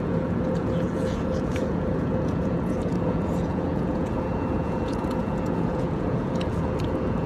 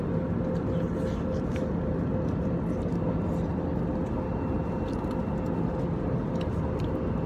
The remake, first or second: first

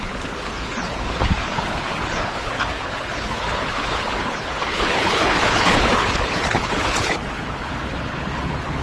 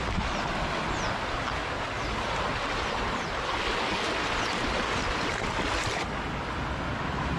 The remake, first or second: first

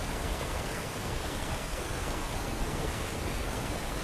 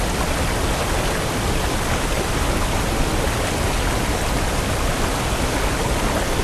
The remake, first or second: first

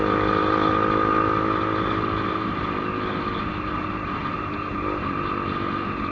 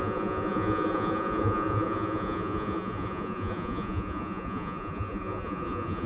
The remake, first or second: second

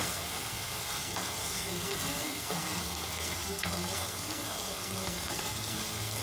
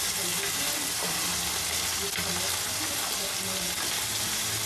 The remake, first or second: first